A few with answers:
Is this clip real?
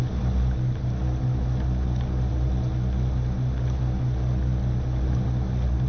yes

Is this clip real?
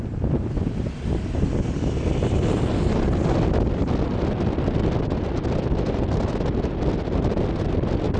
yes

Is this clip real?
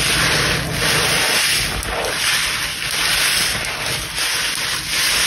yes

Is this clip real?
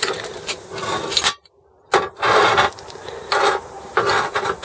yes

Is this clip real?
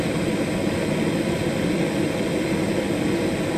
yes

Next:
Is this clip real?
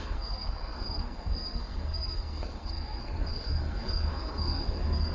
no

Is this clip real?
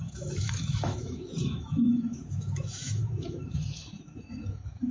no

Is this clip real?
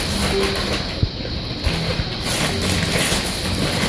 yes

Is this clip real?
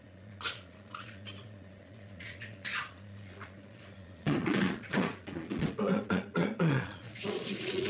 no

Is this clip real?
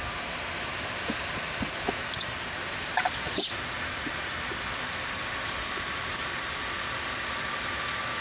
yes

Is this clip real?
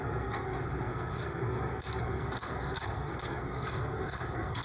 no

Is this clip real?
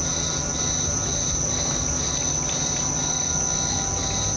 yes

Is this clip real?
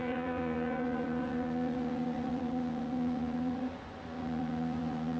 no